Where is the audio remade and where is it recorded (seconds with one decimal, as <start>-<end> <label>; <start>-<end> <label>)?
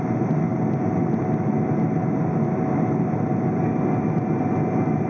0.0-5.1 recorded